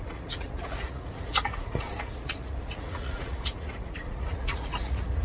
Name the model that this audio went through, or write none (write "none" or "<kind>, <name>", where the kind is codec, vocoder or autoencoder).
vocoder, Vocos